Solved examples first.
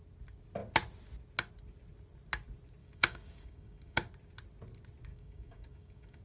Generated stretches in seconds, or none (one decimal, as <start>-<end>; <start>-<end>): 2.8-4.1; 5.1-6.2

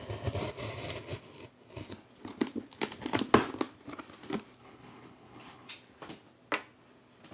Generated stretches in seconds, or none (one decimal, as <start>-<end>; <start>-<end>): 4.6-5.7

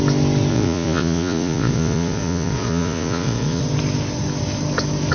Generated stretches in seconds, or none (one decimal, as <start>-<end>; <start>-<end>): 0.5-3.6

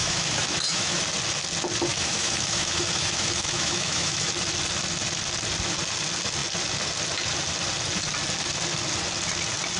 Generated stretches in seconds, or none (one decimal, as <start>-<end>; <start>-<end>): 0.0-1.0; 1.9-4.3